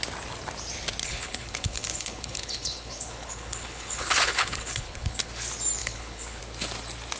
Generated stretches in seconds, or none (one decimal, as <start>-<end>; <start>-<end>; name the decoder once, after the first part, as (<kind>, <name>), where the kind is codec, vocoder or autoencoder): 1.0-5.3 (codec, HILCodec); 5.8-6.4